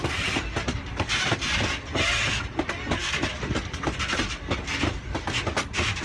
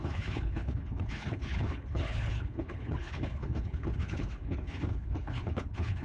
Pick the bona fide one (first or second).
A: first